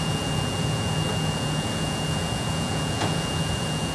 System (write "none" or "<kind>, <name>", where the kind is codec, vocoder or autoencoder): vocoder, Vocos